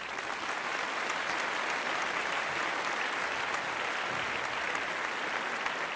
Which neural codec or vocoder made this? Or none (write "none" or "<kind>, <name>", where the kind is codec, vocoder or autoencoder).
none